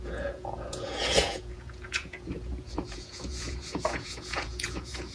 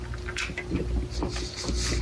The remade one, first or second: first